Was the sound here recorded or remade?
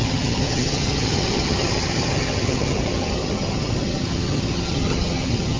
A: remade